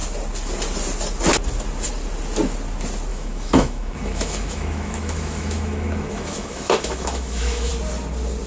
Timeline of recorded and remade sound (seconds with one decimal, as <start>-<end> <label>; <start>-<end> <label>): 0.0-3.1 recorded; 3.1-7.7 remade; 7.7-8.5 recorded